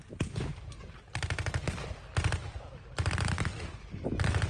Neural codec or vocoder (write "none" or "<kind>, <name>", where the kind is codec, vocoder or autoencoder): none